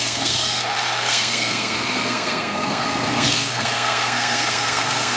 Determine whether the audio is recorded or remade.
remade